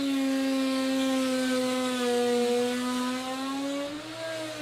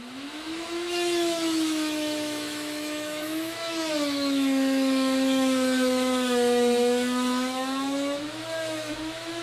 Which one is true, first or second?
first